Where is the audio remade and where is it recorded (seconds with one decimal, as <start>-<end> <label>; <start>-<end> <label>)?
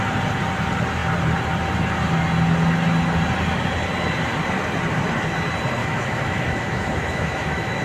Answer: 0.0-5.8 recorded; 5.8-7.8 remade